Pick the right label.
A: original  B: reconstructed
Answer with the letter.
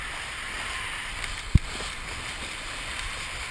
A